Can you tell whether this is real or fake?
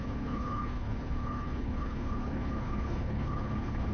fake